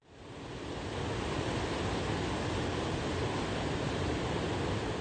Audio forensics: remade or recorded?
recorded